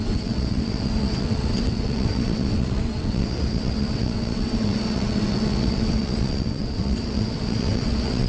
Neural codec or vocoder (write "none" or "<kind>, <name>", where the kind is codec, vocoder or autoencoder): vocoder, WaveNeXt